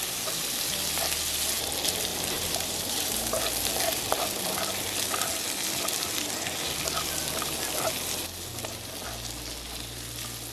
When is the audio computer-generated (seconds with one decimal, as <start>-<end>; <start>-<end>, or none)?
2.1-3.4